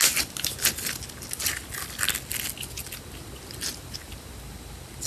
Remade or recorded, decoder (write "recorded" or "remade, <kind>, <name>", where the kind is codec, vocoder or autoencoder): recorded